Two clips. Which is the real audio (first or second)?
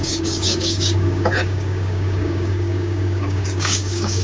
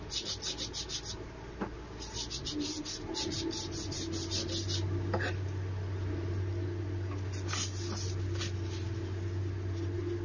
second